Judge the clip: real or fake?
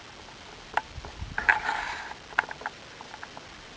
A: real